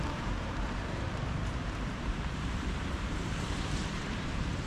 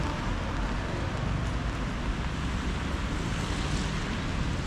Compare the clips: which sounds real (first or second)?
second